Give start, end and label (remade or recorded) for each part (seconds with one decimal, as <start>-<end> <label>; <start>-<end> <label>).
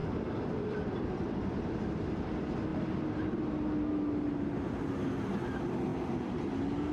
0.0-1.6 remade; 1.6-5.9 recorded; 5.9-6.5 remade; 6.5-6.9 recorded